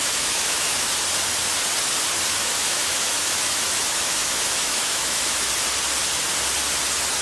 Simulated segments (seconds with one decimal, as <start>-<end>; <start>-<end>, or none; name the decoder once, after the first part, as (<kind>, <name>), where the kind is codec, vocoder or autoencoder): 0.0-0.9 (autoencoder, DAC-VAE); 2.4-5.5

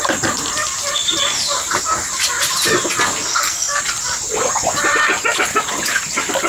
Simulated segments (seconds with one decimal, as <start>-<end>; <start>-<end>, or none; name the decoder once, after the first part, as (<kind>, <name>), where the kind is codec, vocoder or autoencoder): 3.3-3.8 (codec, SNAC)

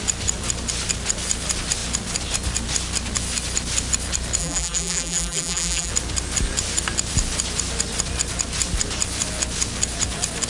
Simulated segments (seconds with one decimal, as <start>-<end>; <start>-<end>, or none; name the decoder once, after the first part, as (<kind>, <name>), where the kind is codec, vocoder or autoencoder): 4.4-5.9 (vocoder, BigVGAN v2)

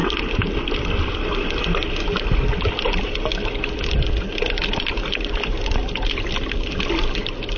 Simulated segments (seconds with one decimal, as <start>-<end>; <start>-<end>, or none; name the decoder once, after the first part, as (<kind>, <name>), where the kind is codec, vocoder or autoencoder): none